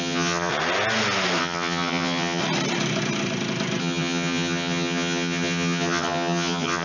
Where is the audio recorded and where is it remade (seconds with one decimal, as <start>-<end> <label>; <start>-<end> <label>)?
0.0-0.5 remade; 0.5-1.4 recorded; 1.4-2.4 remade; 2.4-3.8 recorded; 3.8-6.8 remade

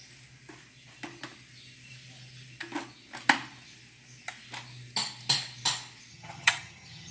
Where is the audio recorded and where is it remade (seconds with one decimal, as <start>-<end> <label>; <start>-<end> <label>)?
0.0-6.1 recorded; 6.1-7.1 remade

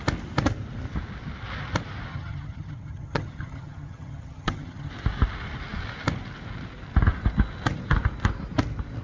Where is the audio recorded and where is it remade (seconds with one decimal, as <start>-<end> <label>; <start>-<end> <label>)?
0.0-2.1 recorded; 2.1-4.9 remade; 4.9-9.0 recorded

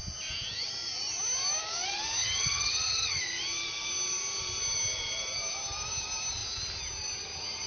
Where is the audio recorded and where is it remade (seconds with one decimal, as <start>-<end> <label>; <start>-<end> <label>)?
0.0-2.2 recorded; 2.2-3.2 remade; 3.2-7.7 recorded

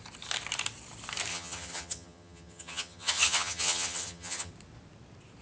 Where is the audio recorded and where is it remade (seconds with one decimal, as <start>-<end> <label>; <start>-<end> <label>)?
0.0-1.3 recorded; 1.3-4.5 remade; 4.5-5.4 recorded

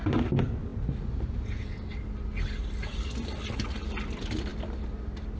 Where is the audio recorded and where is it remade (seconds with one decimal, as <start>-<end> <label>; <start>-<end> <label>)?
0.0-5.4 recorded

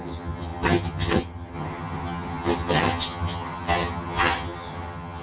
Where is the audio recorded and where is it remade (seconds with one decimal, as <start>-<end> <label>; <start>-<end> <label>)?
0.0-5.2 remade